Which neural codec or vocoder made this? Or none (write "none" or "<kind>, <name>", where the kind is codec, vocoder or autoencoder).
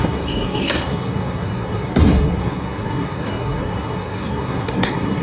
codec, SNAC